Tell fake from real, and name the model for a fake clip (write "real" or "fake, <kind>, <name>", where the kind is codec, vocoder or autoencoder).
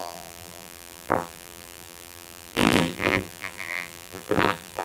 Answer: fake, vocoder, BigVGAN v2